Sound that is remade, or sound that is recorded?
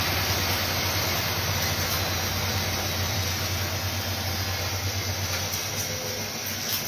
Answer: recorded